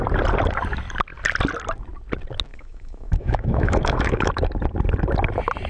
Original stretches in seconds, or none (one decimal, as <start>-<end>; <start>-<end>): 0.0-2.5; 4.3-5.7